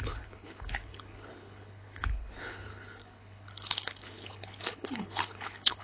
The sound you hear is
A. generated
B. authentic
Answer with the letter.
A